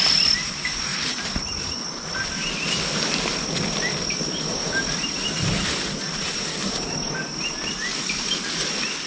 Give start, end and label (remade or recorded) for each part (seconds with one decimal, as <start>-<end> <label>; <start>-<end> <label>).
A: 0.0-9.1 recorded